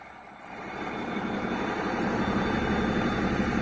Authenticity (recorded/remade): recorded